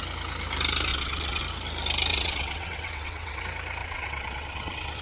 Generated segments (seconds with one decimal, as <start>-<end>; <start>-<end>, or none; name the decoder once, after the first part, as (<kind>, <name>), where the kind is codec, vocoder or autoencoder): 0.9-1.4 (vocoder, WaveNeXt); 2.1-3.4; 3.8-5.0